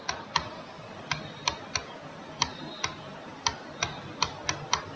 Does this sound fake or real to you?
real